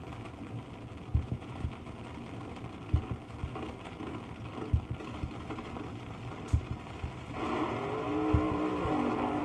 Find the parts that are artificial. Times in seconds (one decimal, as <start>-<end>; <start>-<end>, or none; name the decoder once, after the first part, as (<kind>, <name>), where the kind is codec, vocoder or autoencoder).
1.1-1.7 (vocoder, Vocos)